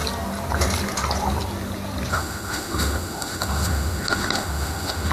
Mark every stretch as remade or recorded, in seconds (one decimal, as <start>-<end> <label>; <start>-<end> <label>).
0.0-2.1 recorded; 2.1-5.1 remade

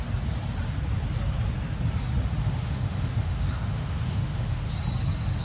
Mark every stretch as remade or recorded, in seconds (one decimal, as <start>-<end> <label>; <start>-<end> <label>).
0.0-2.4 recorded; 2.4-4.7 remade; 4.7-5.4 recorded

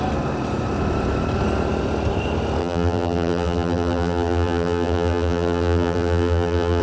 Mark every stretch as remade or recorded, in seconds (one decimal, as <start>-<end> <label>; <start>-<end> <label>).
0.0-2.6 recorded; 2.6-6.8 remade

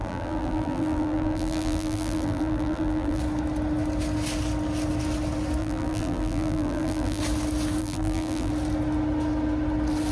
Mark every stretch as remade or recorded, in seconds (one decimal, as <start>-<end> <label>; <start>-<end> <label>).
0.0-3.2 remade; 3.2-5.6 recorded; 5.6-7.2 remade; 7.2-7.8 recorded; 7.8-8.5 remade; 8.5-10.1 recorded

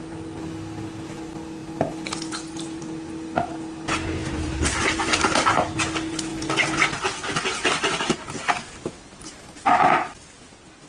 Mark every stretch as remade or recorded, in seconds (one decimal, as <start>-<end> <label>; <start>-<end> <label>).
0.0-4.2 recorded; 4.2-5.8 remade; 5.8-10.9 recorded